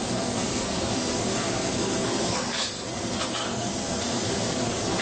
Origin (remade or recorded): remade